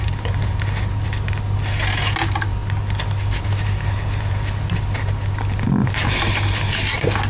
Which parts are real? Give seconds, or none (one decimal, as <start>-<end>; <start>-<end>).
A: 0.0-7.3

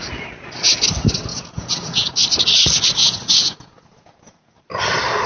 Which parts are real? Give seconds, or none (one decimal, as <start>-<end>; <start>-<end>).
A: 0.0-1.3; 2.1-3.0; 4.6-5.3

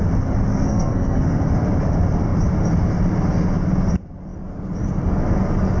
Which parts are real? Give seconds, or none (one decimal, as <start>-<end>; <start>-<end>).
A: 0.0-0.5; 1.4-5.8